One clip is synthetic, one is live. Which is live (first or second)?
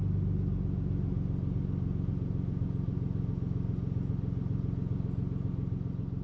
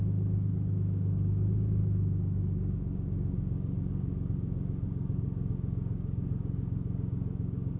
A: first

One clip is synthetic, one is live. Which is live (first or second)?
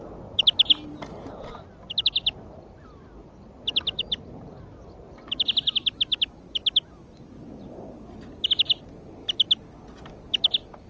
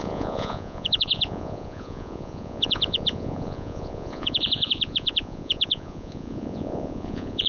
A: first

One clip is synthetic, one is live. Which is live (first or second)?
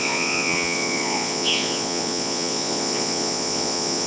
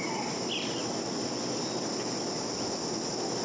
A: second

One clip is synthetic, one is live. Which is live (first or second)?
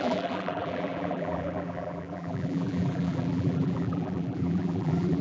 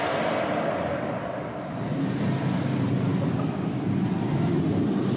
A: second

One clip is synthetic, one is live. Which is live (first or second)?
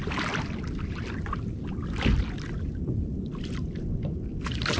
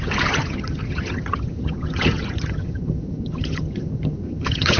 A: first